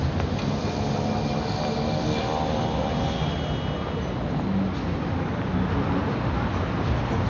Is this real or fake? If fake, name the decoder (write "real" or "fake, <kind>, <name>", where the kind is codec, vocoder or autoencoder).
real